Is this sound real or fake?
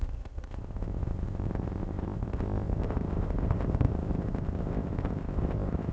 fake